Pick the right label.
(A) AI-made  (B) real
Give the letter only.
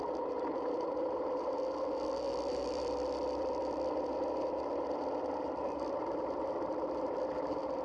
A